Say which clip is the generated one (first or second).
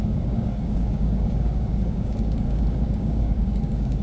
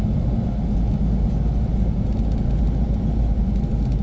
first